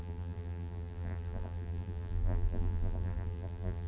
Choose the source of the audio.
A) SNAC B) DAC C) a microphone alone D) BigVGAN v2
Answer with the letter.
D